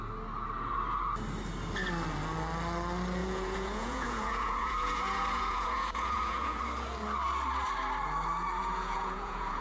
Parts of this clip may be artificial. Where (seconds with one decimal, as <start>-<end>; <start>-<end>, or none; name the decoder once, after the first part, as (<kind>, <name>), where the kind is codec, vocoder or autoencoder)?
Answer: 3.2-6.6 (vocoder, Vocos); 8.6-9.6